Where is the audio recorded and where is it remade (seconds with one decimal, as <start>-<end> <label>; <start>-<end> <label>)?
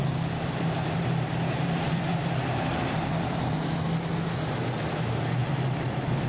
0.0-3.8 remade; 3.8-5.4 recorded; 5.4-6.3 remade